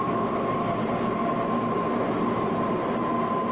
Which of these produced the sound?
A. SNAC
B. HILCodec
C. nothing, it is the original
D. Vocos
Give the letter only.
C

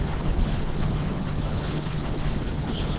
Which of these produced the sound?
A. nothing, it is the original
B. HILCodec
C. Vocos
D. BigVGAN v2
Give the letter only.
B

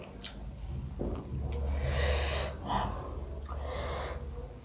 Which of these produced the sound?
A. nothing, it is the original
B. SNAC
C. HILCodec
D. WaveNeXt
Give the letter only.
A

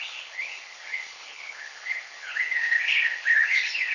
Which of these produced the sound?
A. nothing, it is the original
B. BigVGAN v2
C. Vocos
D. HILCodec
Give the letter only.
D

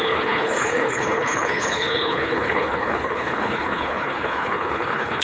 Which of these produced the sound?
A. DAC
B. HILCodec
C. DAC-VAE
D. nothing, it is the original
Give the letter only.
B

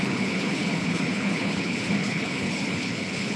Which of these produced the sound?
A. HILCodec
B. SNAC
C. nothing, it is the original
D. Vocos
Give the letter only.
A